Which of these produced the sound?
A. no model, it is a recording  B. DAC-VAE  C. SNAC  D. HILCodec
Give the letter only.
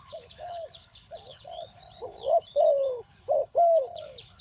D